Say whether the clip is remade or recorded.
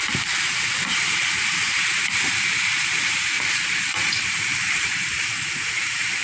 remade